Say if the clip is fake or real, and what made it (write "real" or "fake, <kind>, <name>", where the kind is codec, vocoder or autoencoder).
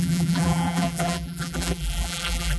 fake, vocoder, BigVGAN v2